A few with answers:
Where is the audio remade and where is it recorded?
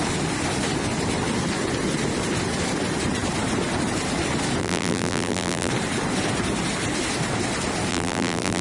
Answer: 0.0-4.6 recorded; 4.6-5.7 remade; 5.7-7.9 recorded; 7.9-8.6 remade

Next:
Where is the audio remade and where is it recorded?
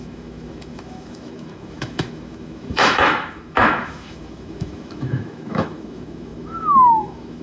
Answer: 0.0-7.4 remade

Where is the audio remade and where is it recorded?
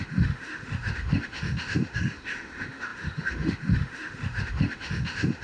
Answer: 0.0-5.4 remade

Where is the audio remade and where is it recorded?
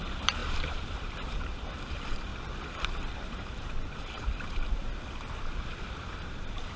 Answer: 0.0-2.3 remade; 2.3-3.0 recorded; 3.0-4.8 remade; 4.8-6.1 recorded; 6.1-6.8 remade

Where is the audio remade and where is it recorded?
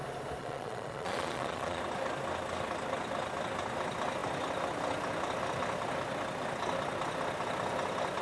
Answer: 0.0-0.4 recorded; 0.4-1.8 remade; 1.8-8.2 recorded